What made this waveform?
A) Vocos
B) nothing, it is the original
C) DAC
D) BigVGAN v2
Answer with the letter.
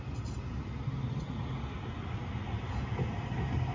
B